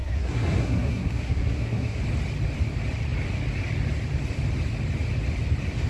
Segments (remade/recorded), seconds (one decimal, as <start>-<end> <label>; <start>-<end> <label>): 0.0-2.0 remade; 2.0-5.9 recorded